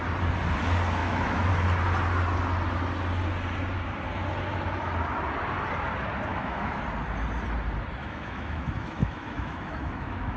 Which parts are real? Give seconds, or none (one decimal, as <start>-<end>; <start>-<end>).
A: 0.0-1.0; 1.5-6.3; 6.8-8.0

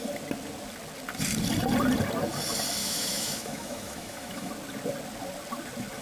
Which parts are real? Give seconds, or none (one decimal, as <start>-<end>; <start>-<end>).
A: 0.0-2.8; 4.5-6.0